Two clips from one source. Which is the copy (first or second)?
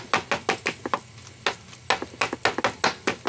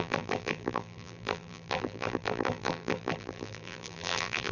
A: second